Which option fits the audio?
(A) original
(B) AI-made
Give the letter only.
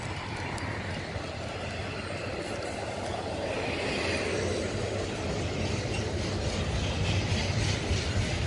A